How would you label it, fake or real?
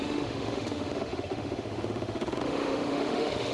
fake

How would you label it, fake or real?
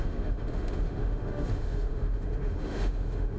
fake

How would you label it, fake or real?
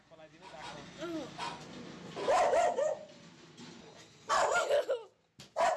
real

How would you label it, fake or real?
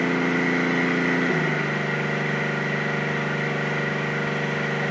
real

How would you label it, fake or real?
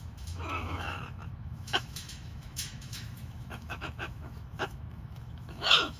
fake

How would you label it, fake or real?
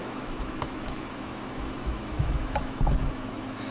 fake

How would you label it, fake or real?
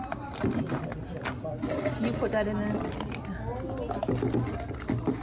real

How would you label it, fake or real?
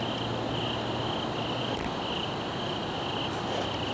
real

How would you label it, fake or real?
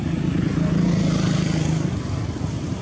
real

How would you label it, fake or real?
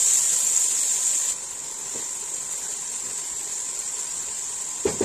real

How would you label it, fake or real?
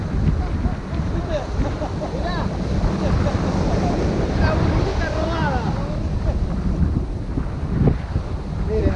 real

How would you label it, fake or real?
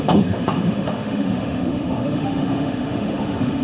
fake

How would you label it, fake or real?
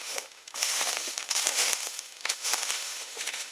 fake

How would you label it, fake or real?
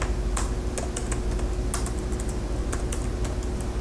real